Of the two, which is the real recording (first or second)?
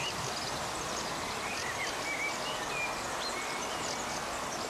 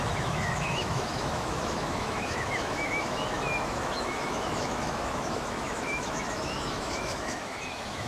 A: first